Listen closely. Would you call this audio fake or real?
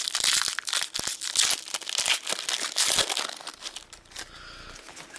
real